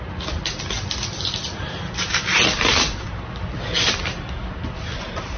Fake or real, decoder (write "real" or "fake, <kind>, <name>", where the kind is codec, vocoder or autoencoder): real